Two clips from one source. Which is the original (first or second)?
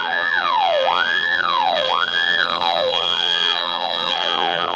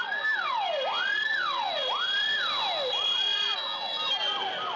second